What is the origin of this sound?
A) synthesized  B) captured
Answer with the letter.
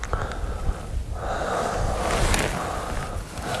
B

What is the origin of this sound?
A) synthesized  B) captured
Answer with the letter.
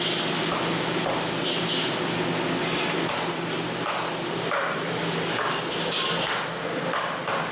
B